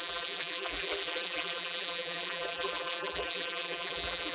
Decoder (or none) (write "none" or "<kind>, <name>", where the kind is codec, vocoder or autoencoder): vocoder, BigVGAN v2